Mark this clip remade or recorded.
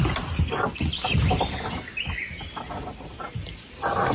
recorded